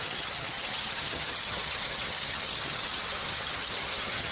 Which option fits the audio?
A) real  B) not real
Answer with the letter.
B